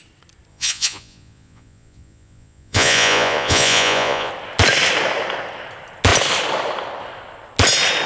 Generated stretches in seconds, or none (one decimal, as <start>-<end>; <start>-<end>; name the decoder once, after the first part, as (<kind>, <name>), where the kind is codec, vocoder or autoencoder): 0.5-4.3 (vocoder, Vocos)

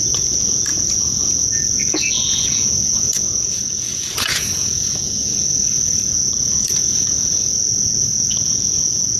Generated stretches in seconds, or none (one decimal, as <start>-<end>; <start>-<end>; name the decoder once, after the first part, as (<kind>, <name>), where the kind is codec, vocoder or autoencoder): 0.0-9.2 (vocoder, Vocos)